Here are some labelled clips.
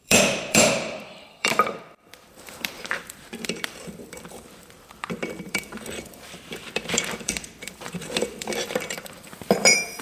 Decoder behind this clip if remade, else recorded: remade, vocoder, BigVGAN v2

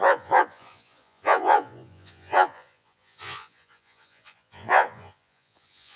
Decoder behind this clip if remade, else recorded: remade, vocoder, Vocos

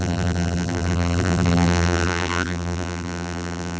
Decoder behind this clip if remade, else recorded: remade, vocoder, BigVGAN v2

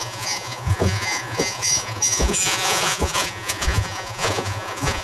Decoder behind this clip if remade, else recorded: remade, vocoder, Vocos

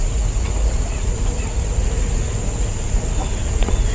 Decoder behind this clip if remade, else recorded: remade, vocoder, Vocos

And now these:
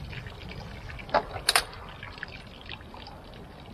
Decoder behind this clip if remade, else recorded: recorded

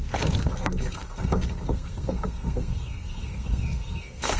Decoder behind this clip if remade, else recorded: remade, codec, SNAC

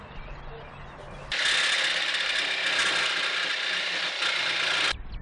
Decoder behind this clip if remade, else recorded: recorded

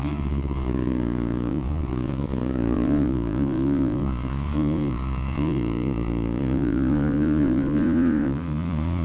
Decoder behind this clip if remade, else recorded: remade, vocoder, Vocos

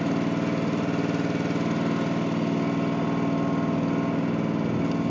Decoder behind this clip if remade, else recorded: recorded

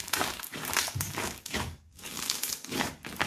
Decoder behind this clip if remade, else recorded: remade, codec, DAC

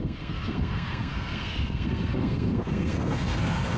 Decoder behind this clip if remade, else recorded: remade, codec, SNAC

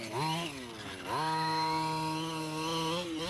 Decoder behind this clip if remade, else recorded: recorded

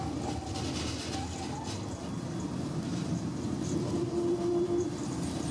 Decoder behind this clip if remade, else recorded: recorded